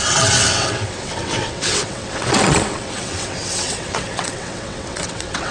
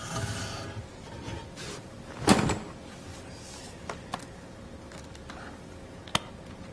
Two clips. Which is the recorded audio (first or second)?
second